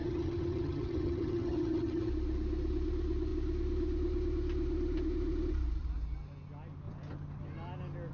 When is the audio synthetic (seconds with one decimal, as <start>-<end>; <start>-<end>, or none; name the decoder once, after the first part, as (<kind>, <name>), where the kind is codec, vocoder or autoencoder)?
0.0-2.1 (vocoder, HiFi-GAN)